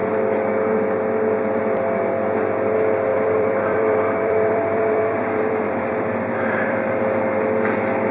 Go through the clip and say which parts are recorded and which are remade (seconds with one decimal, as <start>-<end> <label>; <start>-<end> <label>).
0.0-3.1 recorded; 3.1-7.0 remade; 7.0-8.1 recorded